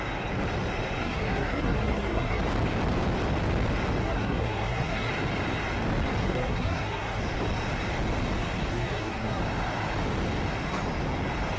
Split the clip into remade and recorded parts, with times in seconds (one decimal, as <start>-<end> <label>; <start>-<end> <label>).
0.0-1.0 recorded; 1.0-2.4 remade; 2.4-4.0 recorded; 4.0-5.1 remade; 5.1-6.2 recorded; 6.2-7.2 remade; 7.2-8.7 recorded; 8.7-9.4 remade; 9.4-11.6 recorded